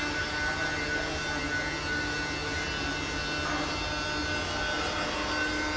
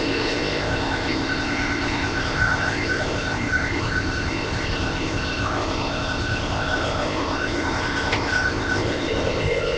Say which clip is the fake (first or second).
second